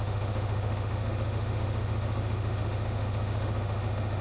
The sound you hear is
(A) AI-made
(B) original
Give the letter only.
A